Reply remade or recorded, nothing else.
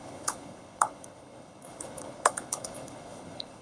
remade